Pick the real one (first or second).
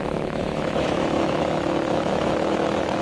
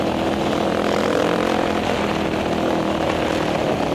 second